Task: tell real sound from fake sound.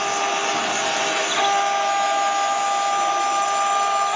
real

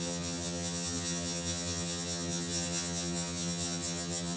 fake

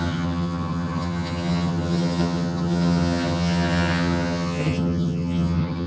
fake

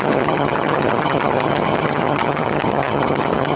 fake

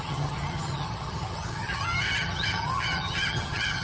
fake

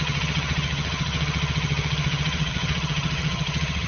fake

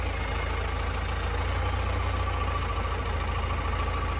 real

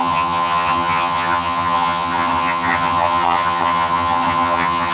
fake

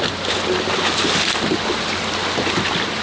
real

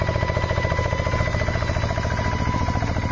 real